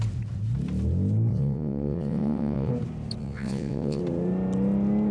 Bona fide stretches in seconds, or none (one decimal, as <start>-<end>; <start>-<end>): 0.0-1.3; 2.7-3.2; 4.0-5.1